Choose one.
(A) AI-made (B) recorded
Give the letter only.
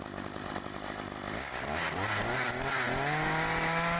B